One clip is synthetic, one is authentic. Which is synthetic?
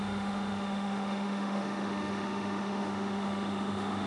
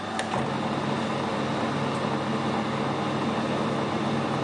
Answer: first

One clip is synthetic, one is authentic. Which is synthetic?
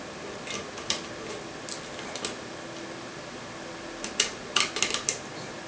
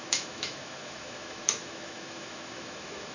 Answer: second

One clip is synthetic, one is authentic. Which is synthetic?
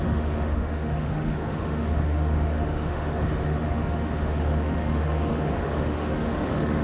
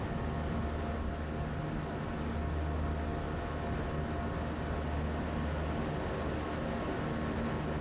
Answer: first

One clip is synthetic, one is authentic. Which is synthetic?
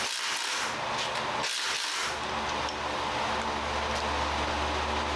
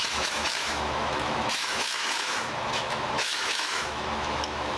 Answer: second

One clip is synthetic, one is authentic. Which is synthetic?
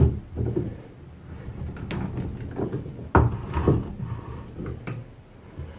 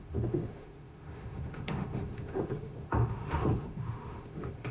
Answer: second